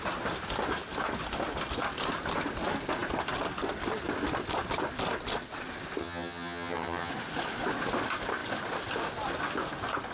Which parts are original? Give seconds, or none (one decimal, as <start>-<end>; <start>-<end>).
0.0-6.0; 7.1-10.1